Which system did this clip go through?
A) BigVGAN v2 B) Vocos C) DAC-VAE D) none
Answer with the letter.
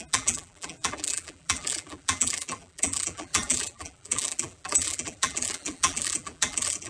A